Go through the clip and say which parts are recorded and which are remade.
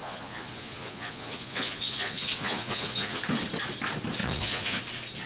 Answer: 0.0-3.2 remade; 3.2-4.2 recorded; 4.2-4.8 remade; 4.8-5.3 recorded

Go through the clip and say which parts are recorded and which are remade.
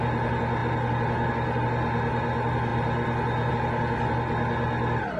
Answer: 0.0-5.2 recorded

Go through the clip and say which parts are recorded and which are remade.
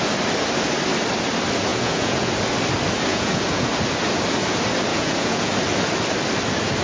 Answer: 0.0-1.7 recorded; 1.7-2.3 remade; 2.3-3.1 recorded; 3.1-3.7 remade; 3.7-4.9 recorded; 4.9-5.5 remade; 5.5-6.8 recorded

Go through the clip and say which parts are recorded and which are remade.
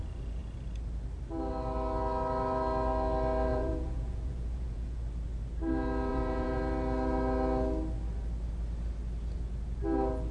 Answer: 0.0-3.5 recorded; 3.5-5.0 remade; 5.0-6.1 recorded; 6.1-6.6 remade; 6.6-10.3 recorded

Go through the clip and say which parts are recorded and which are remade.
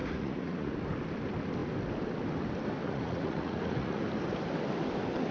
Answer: 0.0-0.7 remade; 0.7-2.8 recorded; 2.8-4.0 remade; 4.0-5.3 recorded